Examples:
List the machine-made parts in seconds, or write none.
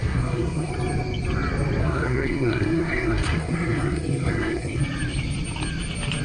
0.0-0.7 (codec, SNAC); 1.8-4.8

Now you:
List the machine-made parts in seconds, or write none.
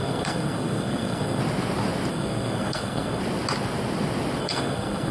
0.0-1.4 (codec, SNAC); 2.1-3.2; 4.4-5.1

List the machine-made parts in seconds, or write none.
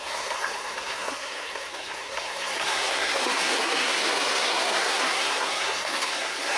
0.0-6.6 (codec, SNAC)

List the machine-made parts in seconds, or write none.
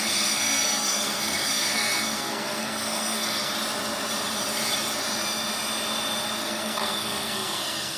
0.0-3.5 (codec, SNAC); 6.4-8.0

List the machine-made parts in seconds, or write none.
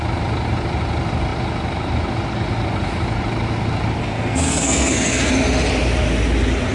4.0-5.3 (codec, SNAC)